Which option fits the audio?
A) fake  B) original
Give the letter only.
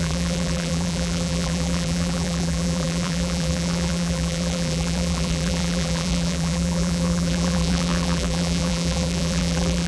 A